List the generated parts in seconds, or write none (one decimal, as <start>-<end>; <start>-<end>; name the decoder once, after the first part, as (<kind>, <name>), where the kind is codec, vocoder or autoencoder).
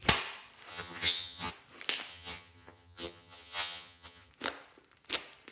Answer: 0.7-1.5 (vocoder, HiFi-GAN); 2.1-4.3